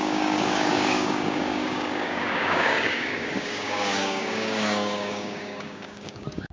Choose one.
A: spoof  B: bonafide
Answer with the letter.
A